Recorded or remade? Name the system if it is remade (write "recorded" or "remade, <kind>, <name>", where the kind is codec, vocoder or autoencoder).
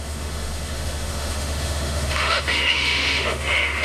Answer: remade, autoencoder, DAC-VAE